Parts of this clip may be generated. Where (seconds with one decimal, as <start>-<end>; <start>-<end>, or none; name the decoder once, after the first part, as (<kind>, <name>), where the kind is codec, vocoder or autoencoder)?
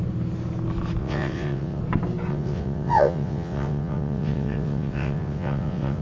1.0-1.8 (vocoder, WaveNeXt); 2.3-6.0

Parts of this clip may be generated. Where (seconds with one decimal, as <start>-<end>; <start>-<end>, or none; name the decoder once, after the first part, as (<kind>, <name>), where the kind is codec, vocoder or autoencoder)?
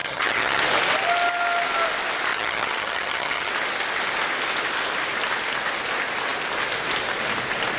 0.0-0.6 (vocoder, HiFi-GAN); 2.3-3.5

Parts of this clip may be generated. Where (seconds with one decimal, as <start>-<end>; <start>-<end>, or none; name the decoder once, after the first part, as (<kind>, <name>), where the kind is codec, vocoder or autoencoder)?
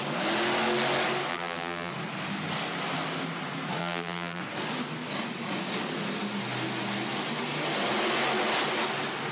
1.3-1.9 (vocoder, BigVGAN v2); 3.8-4.4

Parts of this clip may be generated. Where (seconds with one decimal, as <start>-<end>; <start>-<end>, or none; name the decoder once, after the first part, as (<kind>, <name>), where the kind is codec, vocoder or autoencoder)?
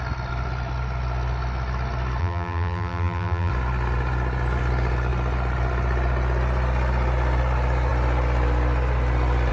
2.2-3.5 (vocoder, BigVGAN v2)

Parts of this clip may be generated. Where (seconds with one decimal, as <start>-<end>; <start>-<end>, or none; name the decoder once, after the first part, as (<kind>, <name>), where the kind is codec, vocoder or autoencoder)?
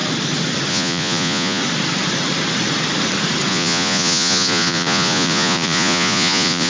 0.7-1.6 (vocoder, Vocos); 3.5-6.7